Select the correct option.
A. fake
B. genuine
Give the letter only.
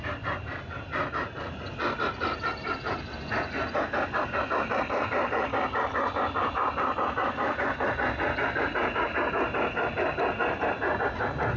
B